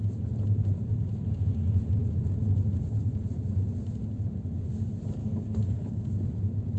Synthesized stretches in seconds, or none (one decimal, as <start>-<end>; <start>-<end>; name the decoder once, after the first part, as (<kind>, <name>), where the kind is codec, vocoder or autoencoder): 5.2-6.1 (codec, SNAC)